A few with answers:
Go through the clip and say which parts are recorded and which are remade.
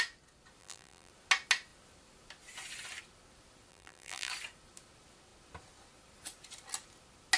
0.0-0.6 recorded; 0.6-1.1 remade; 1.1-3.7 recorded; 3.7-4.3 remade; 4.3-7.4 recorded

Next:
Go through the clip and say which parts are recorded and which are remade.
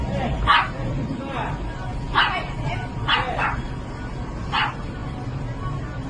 0.0-6.1 recorded